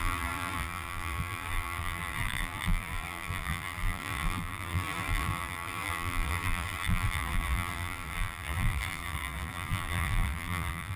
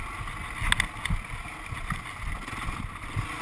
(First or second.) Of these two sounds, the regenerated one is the first